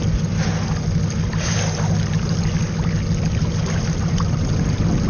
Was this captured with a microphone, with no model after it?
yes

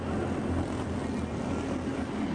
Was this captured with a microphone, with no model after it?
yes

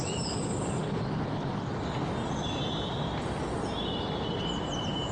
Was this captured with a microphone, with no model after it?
yes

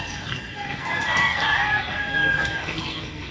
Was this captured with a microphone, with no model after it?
no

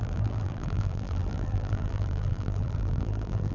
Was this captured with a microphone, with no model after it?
no